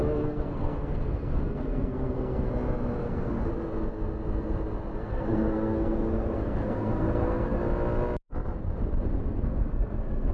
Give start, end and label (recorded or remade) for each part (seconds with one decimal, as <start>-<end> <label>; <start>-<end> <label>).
0.0-2.5 remade; 2.5-3.0 recorded; 3.0-3.5 remade; 3.5-5.0 recorded; 5.0-7.6 remade; 7.6-9.1 recorded; 9.1-10.3 remade